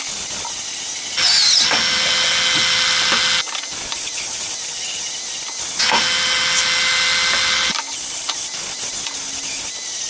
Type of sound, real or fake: real